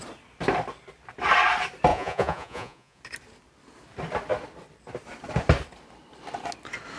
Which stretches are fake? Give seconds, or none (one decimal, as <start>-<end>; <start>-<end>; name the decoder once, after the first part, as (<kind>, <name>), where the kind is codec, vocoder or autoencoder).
1.9-3.0 (vocoder, Vocos)